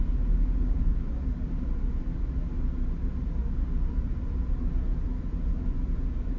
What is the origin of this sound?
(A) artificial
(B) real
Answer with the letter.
B